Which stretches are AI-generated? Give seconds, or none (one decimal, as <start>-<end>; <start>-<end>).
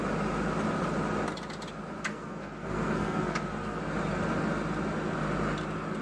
2.1-3.8